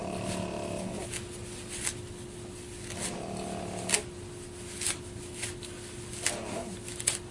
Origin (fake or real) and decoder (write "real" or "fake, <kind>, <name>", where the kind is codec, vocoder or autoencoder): real